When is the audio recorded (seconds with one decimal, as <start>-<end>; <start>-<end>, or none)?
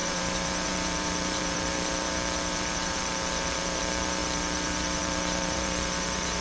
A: none